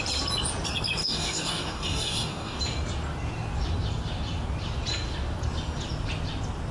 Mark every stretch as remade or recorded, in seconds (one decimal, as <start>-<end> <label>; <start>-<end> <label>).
0.0-1.0 recorded; 1.0-2.6 remade; 2.6-6.7 recorded